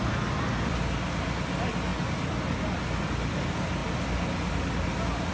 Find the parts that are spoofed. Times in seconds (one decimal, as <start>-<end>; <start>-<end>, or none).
none